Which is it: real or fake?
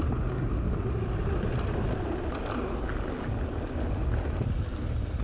real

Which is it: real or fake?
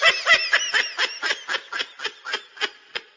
real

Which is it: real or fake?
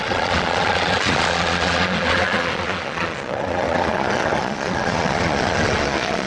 fake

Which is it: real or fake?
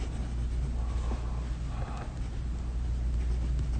real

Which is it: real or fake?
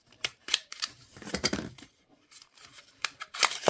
fake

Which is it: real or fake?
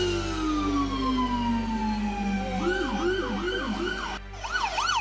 real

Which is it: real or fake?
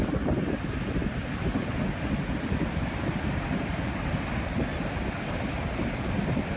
real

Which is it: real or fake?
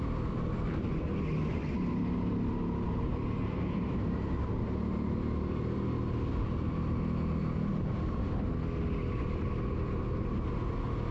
real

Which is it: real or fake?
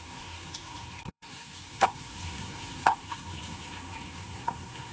fake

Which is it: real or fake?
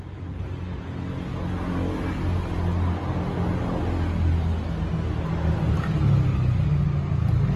real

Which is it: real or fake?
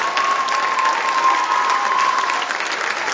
real